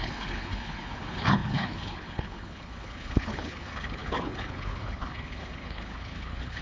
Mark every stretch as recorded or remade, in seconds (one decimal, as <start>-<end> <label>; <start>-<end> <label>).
0.0-6.6 remade